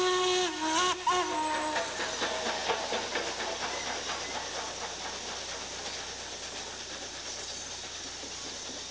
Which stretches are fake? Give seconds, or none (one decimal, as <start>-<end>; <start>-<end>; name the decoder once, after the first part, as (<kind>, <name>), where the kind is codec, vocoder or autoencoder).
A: none